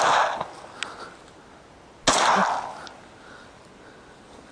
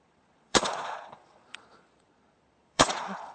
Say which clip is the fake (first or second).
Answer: second